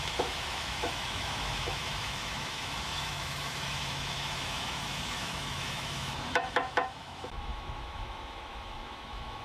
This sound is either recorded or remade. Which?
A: remade